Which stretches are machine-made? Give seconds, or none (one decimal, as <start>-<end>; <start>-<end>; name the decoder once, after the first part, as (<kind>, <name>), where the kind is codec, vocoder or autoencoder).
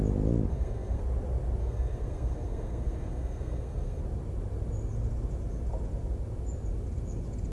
0.5-1.0 (codec, SNAC); 1.6-4.0